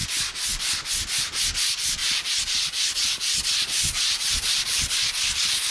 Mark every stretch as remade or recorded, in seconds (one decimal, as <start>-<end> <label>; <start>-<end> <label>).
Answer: 0.0-2.0 recorded; 2.0-5.7 remade